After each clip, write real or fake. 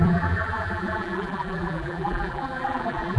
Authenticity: fake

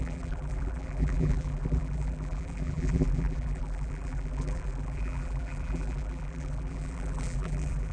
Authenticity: fake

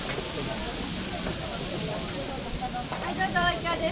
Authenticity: fake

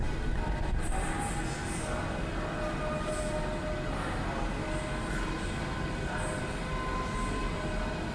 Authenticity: real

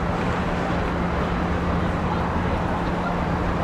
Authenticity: real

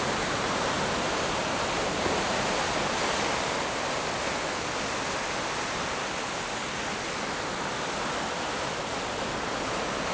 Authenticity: real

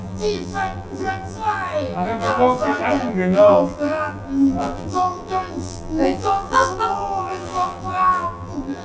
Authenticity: fake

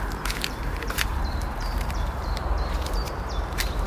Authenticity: fake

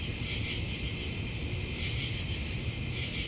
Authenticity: fake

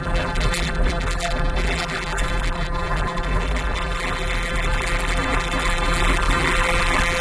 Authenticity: fake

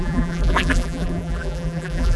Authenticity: fake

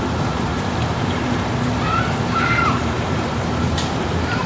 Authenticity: fake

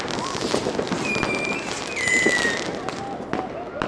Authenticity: real